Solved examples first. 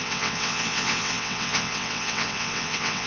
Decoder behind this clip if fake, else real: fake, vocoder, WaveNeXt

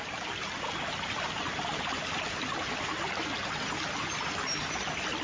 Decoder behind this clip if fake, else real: real